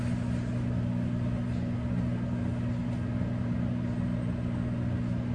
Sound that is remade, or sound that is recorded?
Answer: recorded